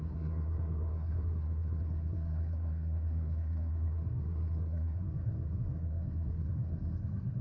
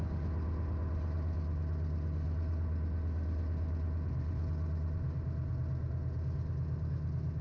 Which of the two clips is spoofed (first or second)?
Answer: first